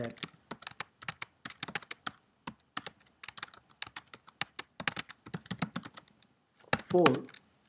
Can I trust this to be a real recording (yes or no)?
yes